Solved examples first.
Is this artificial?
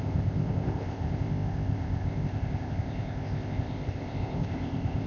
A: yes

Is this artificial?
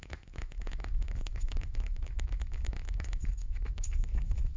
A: yes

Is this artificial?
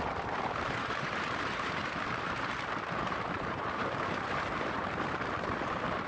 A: yes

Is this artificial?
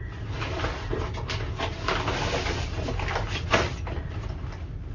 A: no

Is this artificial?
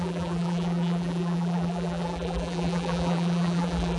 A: yes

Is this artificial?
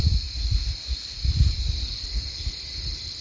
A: no